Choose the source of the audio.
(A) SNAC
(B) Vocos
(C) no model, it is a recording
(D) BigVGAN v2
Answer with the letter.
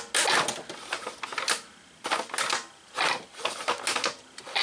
C